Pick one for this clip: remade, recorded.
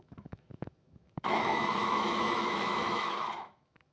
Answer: remade